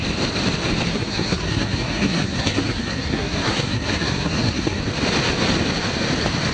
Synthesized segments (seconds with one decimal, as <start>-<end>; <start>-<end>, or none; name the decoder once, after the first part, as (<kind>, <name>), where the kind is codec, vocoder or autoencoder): 0.9-4.8 (codec, SNAC)